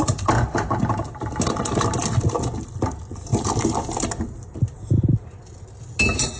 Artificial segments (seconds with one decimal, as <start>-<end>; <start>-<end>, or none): none